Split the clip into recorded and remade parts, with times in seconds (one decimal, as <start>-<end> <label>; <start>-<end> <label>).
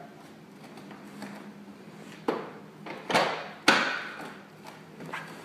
0.0-5.4 recorded